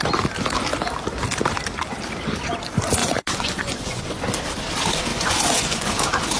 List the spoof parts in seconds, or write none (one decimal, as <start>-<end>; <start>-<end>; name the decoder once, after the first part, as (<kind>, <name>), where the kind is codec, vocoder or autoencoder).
3.0-4.2 (vocoder, Vocos); 5.1-5.9